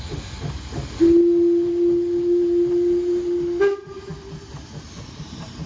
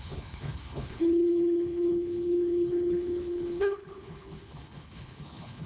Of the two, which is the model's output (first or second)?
second